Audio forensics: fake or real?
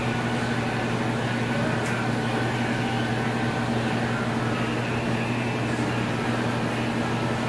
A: real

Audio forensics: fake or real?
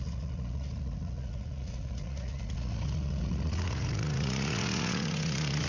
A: fake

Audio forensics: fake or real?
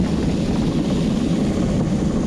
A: real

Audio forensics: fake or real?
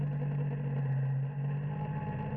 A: real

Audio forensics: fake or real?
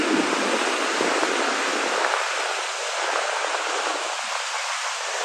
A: real